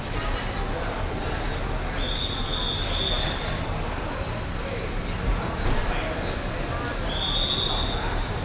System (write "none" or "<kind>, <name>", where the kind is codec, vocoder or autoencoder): none